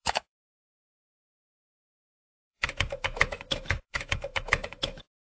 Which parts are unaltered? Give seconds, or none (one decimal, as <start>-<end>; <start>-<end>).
none